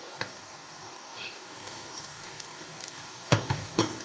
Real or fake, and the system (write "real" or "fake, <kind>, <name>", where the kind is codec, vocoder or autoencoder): fake, codec, DAC